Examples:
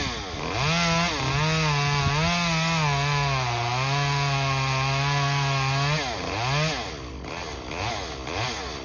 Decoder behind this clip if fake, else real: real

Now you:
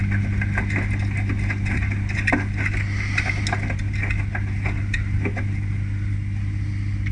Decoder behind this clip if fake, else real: real